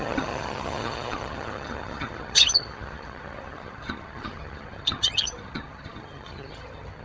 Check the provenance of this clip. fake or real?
fake